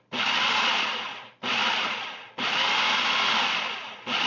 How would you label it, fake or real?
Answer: real